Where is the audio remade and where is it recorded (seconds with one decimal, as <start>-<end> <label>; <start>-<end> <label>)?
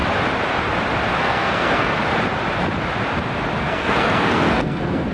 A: 0.0-1.2 recorded; 1.2-2.0 remade; 2.0-3.6 recorded; 3.6-5.1 remade